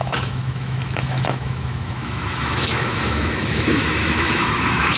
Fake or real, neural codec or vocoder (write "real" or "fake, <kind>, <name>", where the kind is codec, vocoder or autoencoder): fake, autoencoder, DAC-VAE